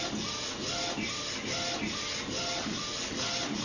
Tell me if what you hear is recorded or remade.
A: recorded